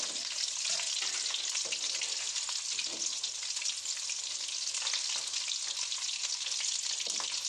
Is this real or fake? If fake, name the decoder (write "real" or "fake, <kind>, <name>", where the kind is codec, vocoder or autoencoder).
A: real